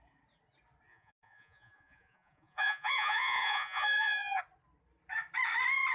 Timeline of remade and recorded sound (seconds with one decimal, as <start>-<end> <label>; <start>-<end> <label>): 0.0-0.9 recorded; 0.9-4.4 remade; 4.4-5.9 recorded